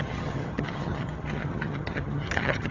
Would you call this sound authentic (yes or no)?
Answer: no